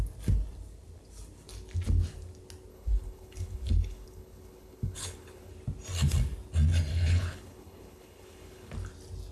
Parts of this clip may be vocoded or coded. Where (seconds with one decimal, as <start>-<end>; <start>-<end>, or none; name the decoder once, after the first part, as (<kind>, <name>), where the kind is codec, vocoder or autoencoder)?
2.7-5.5 (codec, HILCodec); 6.9-8.7